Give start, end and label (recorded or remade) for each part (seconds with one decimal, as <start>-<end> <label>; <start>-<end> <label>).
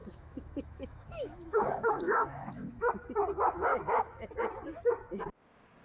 0.0-2.9 remade; 2.9-3.7 recorded; 3.7-4.3 remade; 4.3-5.8 recorded